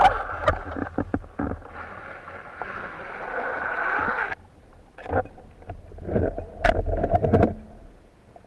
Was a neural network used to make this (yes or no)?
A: no